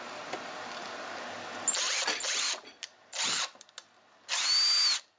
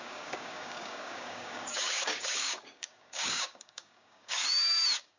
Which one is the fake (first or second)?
second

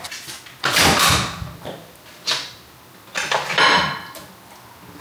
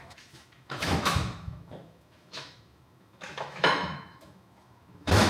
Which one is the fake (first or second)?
second